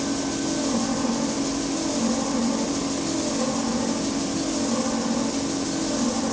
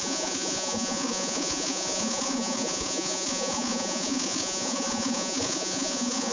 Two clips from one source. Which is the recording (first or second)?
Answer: first